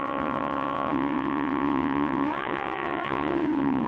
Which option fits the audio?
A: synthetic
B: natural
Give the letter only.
A